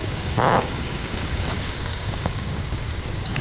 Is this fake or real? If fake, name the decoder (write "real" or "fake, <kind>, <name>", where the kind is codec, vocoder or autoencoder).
fake, codec, DAC